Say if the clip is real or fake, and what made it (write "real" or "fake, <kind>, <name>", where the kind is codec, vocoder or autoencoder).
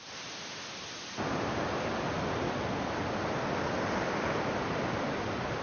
real